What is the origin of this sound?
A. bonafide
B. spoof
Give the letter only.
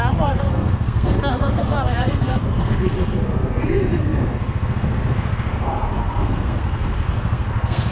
B